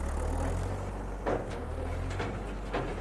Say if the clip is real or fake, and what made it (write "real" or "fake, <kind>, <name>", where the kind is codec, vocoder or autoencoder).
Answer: real